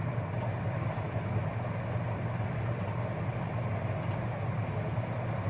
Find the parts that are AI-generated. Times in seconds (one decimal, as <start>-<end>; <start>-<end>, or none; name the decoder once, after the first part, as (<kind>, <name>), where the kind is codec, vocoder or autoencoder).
none